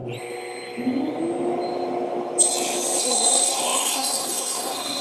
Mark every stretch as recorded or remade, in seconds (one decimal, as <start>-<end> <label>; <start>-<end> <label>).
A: 0.0-3.0 recorded; 3.0-5.0 remade